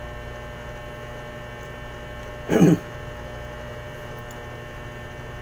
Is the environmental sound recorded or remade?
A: recorded